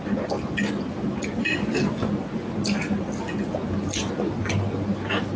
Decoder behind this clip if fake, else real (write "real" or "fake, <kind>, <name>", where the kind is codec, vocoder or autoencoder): real